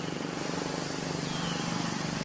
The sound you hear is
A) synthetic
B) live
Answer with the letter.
B